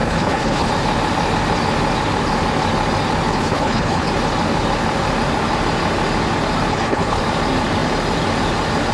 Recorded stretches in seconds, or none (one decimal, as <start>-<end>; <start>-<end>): 0.7-3.3; 4.1-6.7; 7.2-8.9